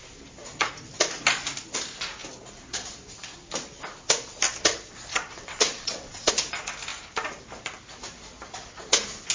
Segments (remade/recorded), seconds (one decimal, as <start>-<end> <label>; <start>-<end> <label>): 0.0-5.1 recorded; 5.1-6.3 remade; 6.3-9.3 recorded